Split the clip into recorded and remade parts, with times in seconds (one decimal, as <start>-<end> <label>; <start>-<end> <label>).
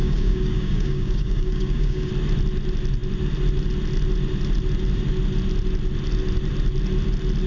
0.0-2.1 remade; 2.1-7.5 recorded